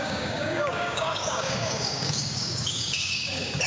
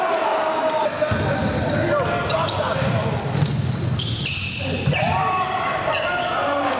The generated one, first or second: first